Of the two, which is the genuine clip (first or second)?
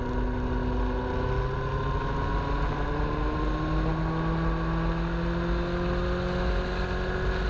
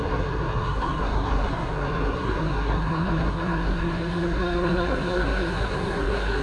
first